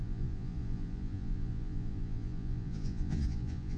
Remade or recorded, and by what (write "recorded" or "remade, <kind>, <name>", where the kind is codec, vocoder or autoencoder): remade, vocoder, Vocos